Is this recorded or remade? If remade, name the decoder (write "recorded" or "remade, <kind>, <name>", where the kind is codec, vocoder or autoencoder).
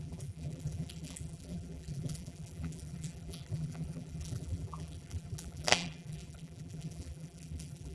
remade, vocoder, BigVGAN v2